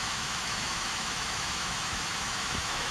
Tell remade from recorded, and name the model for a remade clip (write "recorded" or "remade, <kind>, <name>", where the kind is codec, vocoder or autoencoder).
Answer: remade, autoencoder, DAC-VAE